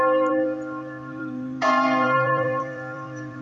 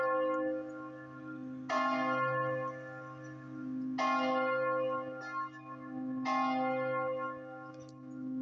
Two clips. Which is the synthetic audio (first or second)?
first